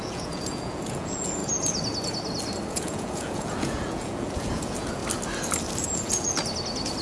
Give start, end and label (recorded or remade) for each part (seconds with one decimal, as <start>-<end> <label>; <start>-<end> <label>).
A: 0.0-1.4 remade; 1.4-2.7 recorded; 2.7-5.0 remade; 5.0-5.8 recorded; 5.8-6.4 remade; 6.4-7.0 recorded